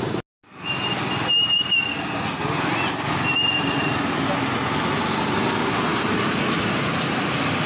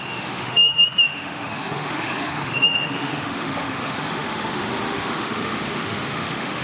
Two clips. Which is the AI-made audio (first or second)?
second